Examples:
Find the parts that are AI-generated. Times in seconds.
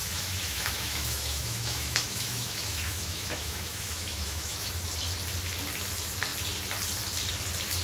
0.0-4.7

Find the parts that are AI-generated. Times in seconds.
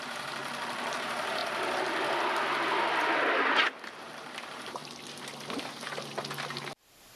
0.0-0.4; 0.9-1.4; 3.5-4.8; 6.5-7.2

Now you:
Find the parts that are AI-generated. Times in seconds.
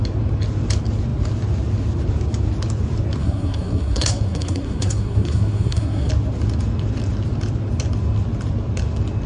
3.2-6.1